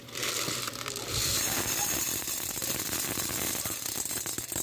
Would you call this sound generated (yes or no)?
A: yes